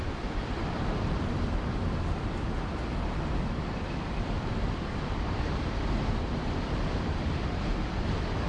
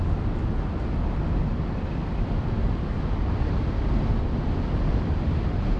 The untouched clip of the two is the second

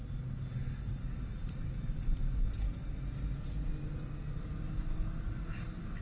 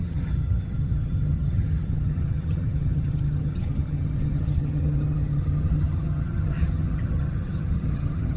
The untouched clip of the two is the first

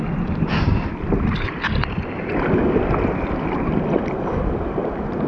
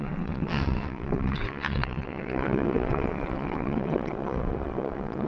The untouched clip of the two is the first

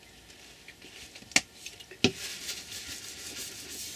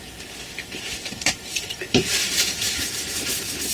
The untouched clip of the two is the first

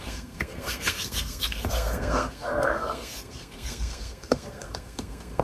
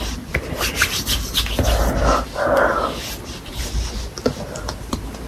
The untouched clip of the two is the second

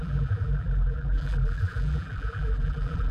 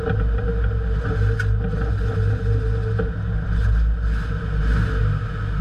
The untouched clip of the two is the second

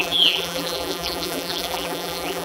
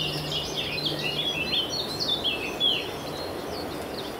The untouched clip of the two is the second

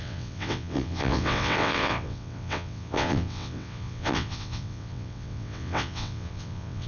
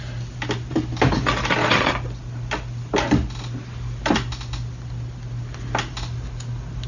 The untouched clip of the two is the second